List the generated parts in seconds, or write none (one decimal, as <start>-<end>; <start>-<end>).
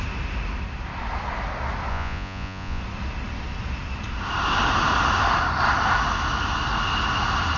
1.9-2.8